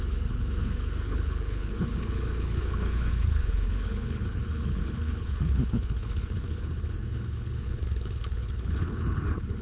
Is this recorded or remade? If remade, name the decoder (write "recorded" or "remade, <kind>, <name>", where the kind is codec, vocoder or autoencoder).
remade, codec, HILCodec